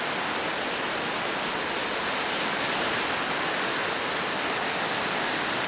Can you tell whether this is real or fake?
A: real